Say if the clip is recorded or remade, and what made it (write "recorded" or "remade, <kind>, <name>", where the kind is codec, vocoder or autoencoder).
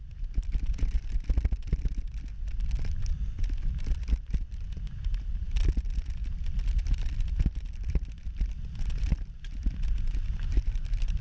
recorded